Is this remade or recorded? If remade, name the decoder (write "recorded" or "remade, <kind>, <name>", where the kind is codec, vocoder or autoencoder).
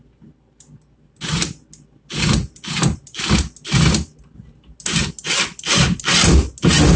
recorded